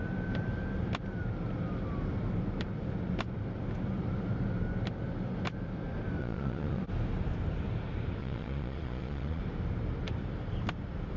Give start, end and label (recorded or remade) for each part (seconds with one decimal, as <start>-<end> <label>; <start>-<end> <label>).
0.0-6.2 recorded; 6.2-6.8 remade; 6.8-8.2 recorded; 8.2-9.4 remade; 9.4-11.2 recorded